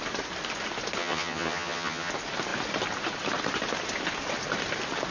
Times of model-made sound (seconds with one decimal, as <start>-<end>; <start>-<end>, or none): 1.0-2.1